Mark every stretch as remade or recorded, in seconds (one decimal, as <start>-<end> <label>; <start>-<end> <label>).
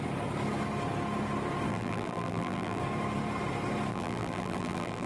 0.0-1.7 recorded; 1.7-2.8 remade; 2.8-3.9 recorded; 3.9-5.1 remade